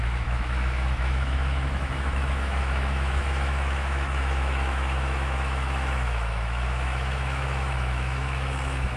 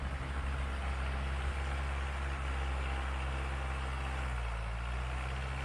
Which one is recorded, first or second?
second